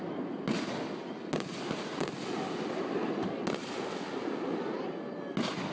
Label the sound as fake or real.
real